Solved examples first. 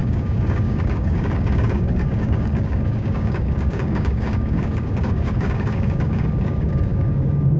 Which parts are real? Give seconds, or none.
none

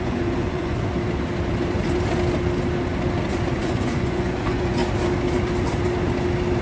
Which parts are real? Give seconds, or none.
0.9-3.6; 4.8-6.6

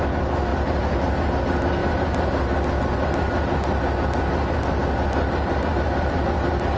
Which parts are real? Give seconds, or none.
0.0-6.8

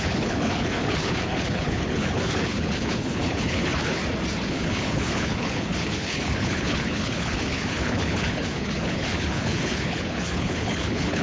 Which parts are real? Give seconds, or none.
4.0-4.5

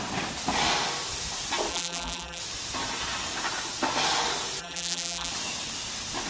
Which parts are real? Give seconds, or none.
0.0-1.7; 2.4-4.6; 5.3-6.3

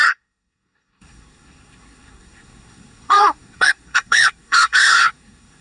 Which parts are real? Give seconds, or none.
none

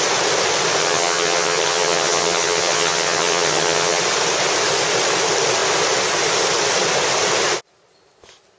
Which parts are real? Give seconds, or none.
0.0-0.8; 4.0-8.6